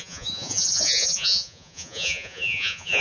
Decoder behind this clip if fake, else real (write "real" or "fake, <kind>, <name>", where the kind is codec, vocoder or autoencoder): fake, vocoder, Vocos